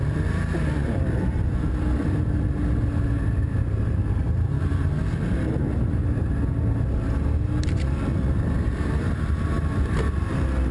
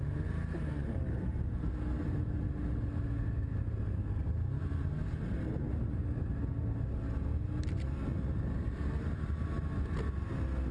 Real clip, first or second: second